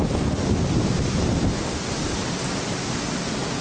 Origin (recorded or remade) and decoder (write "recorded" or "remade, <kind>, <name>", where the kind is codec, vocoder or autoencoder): recorded